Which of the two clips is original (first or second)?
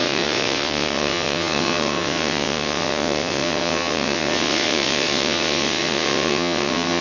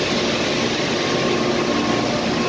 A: second